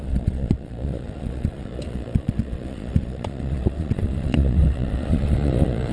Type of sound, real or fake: fake